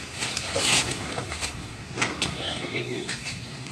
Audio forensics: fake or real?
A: fake